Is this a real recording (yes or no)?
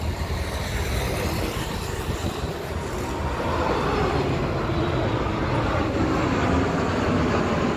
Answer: yes